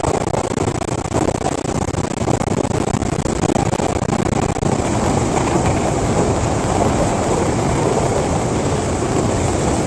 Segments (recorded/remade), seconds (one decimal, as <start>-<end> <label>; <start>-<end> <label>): 0.0-9.9 recorded